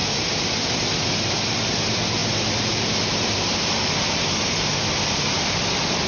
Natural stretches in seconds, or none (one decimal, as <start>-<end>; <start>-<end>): 0.0-6.1